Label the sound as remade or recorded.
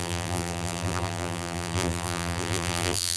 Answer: remade